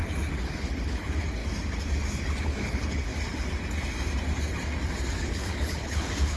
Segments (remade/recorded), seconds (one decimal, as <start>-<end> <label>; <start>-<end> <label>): 0.0-0.6 recorded; 0.6-1.4 remade; 1.4-2.4 recorded; 2.4-3.1 remade; 3.1-5.2 recorded; 5.2-6.4 remade